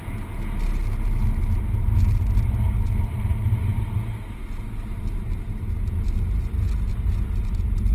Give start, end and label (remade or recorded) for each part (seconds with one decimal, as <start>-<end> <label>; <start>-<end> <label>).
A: 0.0-7.9 recorded